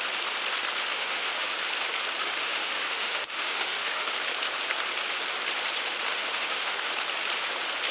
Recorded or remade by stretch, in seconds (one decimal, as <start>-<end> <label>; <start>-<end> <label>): 0.0-0.9 recorded; 0.9-1.5 remade; 1.5-2.2 recorded; 2.2-4.1 remade; 4.1-6.1 recorded; 6.1-6.9 remade; 6.9-7.9 recorded